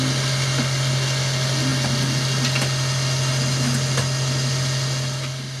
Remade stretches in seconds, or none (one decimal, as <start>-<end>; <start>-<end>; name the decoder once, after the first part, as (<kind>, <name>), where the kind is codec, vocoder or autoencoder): none